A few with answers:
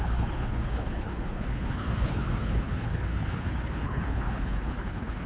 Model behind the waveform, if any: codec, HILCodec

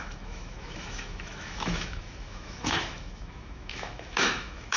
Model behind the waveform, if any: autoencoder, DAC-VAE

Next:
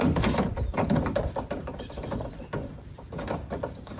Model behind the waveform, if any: vocoder, BigVGAN v2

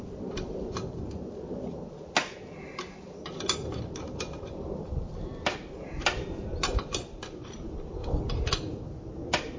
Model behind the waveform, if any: none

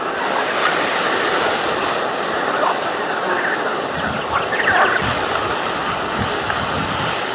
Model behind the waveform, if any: none